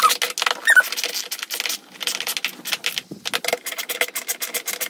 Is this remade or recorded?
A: recorded